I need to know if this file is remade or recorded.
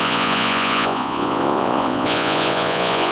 remade